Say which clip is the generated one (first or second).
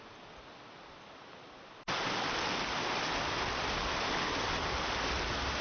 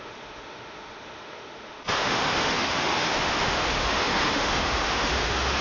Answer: second